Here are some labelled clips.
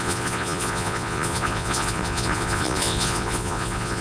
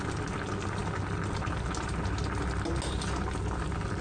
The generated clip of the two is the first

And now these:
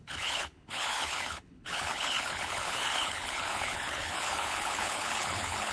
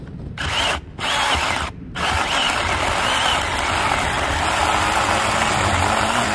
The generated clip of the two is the first